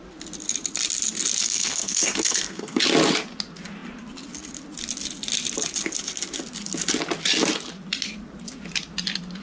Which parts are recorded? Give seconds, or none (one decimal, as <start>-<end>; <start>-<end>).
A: 0.0-1.4; 2.8-9.4